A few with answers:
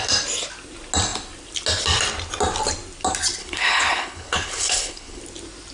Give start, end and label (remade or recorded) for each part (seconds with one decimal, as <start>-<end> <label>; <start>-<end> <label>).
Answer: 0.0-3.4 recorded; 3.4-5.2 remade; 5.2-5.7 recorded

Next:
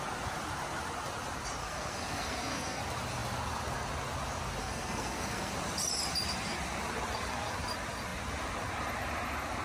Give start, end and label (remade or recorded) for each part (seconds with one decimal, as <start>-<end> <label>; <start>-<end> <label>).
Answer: 0.0-1.6 recorded; 1.6-2.8 remade; 2.8-4.6 recorded; 4.6-5.5 remade; 5.5-9.6 recorded

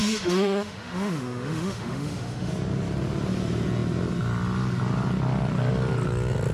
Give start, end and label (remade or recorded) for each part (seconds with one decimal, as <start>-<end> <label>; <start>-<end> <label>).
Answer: 0.0-2.5 remade; 2.5-6.5 recorded

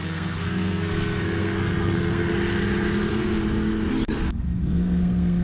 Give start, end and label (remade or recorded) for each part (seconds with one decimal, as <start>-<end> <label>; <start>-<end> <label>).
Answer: 0.0-2.3 remade; 2.3-3.9 recorded; 3.9-5.4 remade

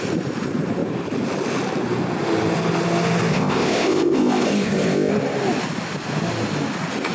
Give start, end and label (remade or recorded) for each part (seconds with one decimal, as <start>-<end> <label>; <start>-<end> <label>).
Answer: 0.0-3.3 recorded; 3.3-5.1 remade; 5.1-7.1 recorded